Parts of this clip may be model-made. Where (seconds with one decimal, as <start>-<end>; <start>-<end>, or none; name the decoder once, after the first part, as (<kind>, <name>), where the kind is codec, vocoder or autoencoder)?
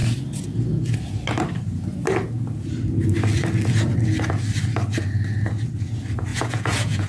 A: 6.3-7.1 (vocoder, Vocos)